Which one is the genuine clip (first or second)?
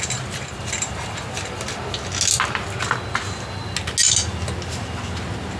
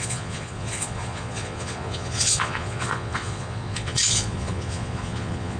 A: first